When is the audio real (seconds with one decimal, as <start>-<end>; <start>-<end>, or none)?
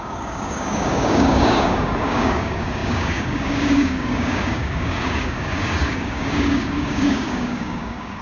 none